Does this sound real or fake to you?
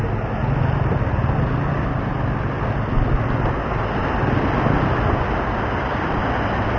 real